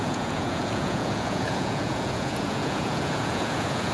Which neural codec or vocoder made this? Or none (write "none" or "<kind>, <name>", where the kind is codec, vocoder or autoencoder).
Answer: vocoder, Vocos